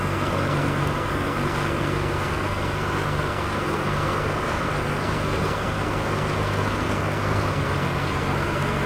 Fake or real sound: fake